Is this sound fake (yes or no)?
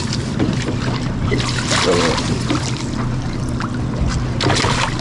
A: no